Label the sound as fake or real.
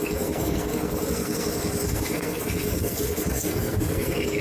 fake